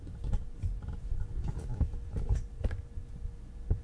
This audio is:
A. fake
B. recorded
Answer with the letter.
B